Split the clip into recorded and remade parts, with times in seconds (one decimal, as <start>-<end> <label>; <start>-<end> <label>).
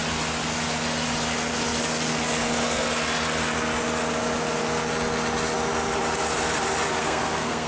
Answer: 0.0-7.0 recorded; 7.0-7.7 remade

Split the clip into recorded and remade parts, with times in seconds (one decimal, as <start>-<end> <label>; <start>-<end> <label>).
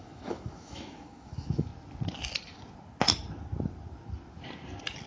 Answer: 0.0-1.7 remade; 1.7-5.1 recorded